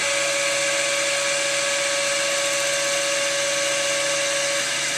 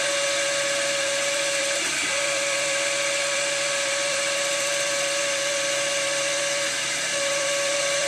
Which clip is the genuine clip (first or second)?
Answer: first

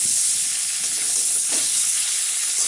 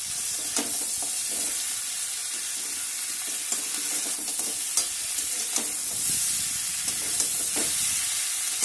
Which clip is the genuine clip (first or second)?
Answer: second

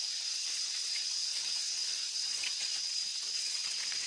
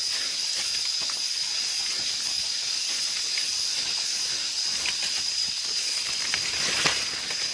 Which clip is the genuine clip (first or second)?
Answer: second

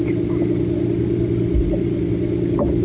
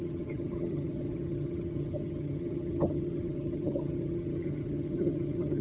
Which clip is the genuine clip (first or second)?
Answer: first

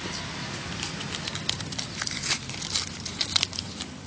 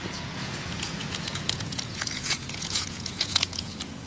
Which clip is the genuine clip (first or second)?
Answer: first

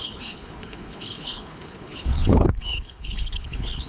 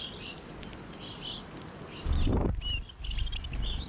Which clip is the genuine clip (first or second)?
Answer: second